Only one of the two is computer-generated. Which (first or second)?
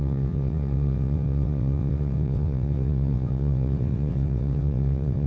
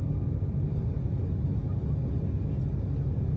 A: first